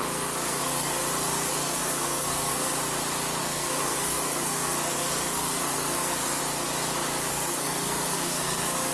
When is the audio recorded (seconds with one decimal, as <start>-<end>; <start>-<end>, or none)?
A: 1.0-1.5; 2.7-3.4; 6.4-7.3

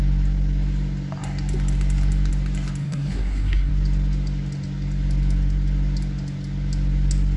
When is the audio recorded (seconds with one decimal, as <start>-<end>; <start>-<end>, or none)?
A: 0.0-2.8; 3.7-7.4

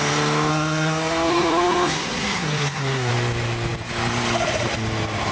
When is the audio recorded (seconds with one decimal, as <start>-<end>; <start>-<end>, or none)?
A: 0.0-0.5; 3.1-5.3

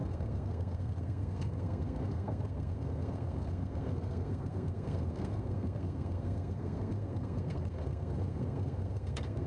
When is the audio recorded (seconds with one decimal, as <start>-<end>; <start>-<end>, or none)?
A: none

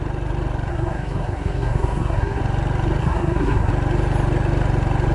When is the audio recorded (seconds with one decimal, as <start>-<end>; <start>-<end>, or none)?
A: 0.0-0.7; 2.4-3.0; 3.7-5.1